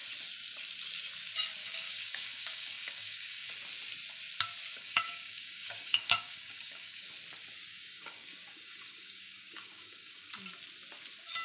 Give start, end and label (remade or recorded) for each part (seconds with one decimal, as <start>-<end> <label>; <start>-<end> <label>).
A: 0.0-1.6 recorded; 1.6-3.5 remade; 3.5-4.7 recorded; 4.7-7.1 remade; 7.1-7.7 recorded; 7.7-10.3 remade; 10.3-11.4 recorded